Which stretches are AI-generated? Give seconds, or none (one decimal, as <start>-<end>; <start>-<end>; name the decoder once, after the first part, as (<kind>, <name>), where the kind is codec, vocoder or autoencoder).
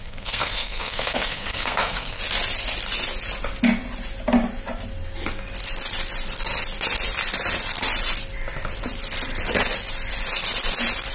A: 0.0-2.2 (codec, SNAC)